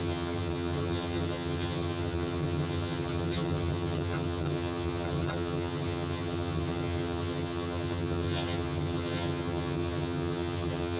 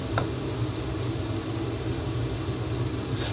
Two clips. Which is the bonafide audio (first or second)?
second